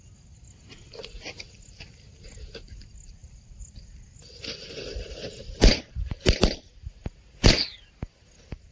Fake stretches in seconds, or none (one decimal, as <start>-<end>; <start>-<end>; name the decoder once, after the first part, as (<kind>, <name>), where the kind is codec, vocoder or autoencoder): 3.2-5.9 (vocoder, BigVGAN v2)